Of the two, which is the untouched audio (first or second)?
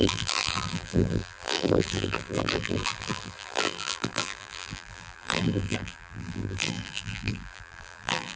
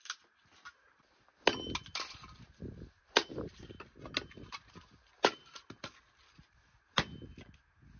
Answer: second